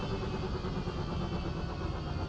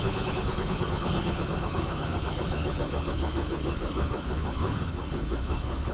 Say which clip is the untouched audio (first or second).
first